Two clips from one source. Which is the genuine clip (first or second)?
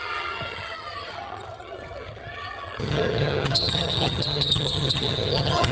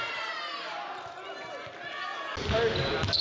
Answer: second